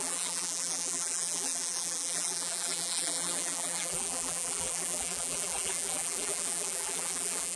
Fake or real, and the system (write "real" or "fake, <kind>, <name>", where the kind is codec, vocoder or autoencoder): fake, vocoder, BigVGAN v2